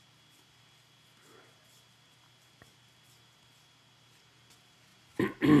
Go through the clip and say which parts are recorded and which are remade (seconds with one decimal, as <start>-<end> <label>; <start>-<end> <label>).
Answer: 0.0-5.6 recorded